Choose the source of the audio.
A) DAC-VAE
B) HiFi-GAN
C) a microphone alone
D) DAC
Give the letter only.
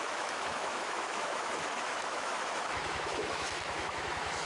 A